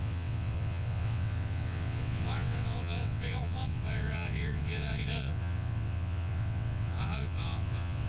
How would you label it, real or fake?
fake